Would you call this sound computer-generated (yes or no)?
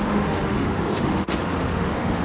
yes